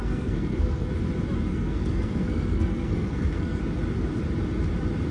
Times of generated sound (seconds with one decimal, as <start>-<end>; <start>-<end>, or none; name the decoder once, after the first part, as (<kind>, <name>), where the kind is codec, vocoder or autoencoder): 0.0-0.9 (codec, SNAC); 1.5-3.6